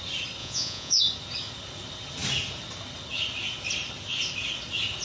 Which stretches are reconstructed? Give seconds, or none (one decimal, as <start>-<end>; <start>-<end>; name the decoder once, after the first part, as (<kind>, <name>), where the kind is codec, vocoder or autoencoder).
0.4-1.0 (vocoder, Vocos)